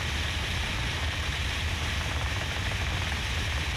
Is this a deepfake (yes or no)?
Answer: yes